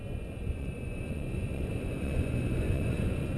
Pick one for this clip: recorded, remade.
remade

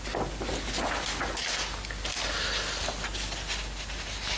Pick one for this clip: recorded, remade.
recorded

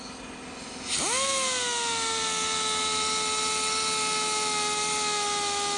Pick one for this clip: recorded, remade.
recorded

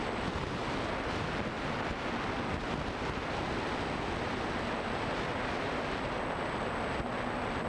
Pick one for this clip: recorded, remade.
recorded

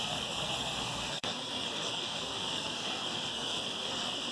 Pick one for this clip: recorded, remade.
remade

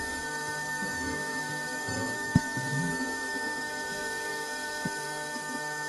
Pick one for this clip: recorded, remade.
remade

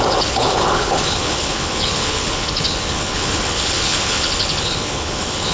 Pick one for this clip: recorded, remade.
remade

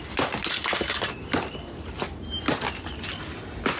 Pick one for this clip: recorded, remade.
recorded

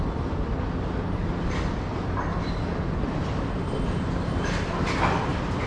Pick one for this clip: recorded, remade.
recorded